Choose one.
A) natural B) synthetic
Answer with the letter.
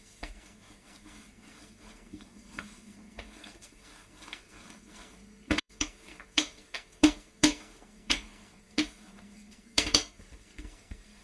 B